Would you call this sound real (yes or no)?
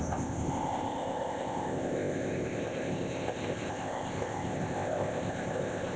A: no